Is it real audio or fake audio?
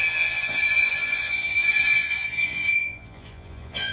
fake